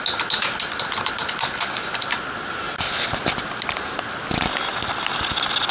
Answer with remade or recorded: recorded